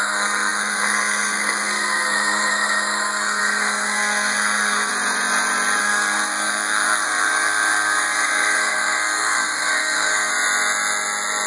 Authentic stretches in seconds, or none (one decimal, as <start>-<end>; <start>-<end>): 4.9-5.8; 10.3-11.5